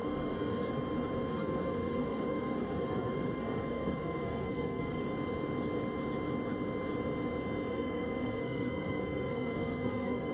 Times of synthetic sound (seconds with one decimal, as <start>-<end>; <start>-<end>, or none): 0.0-0.7; 1.3-5.0; 7.7-10.3